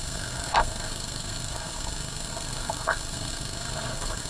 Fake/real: fake